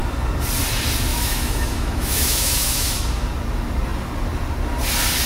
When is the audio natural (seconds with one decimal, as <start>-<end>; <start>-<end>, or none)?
0.0-1.1; 3.0-5.3